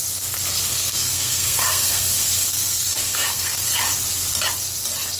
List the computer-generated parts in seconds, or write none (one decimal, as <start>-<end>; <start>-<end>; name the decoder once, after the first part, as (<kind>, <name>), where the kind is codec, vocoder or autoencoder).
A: 0.7-3.8 (codec, SNAC)